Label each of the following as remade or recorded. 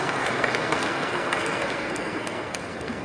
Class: remade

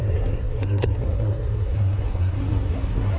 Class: remade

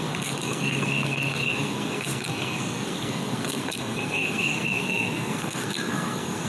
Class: remade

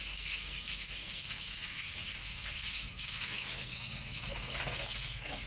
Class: remade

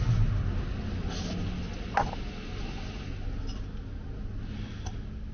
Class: recorded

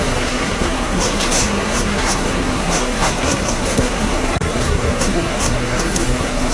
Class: remade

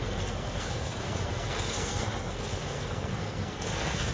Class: remade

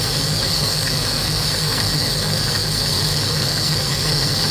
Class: remade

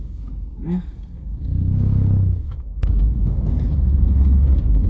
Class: remade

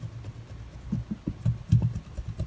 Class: recorded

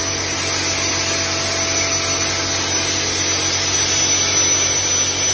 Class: recorded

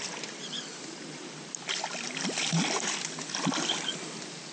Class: recorded